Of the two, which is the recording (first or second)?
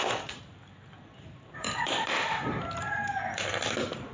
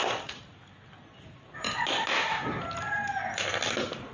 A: second